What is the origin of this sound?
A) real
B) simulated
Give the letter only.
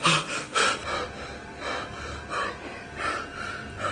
A